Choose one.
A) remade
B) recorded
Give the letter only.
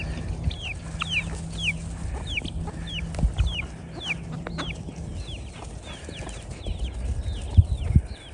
B